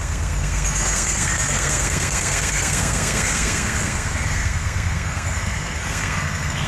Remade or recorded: remade